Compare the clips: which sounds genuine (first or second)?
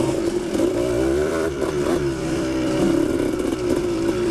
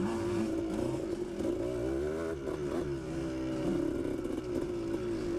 second